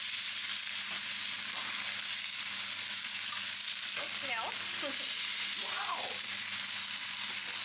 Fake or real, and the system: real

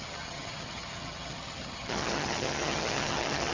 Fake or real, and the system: fake, vocoder, HiFi-GAN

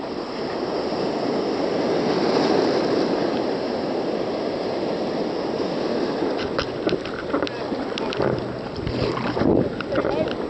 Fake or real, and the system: real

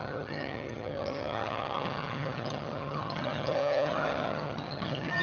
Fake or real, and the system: fake, vocoder, HiFi-GAN